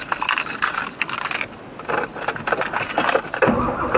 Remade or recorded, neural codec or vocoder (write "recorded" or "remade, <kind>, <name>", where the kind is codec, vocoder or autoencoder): recorded